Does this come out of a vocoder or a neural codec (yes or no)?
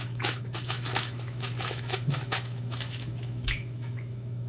yes